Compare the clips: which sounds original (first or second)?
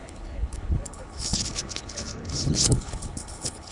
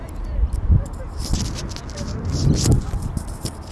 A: second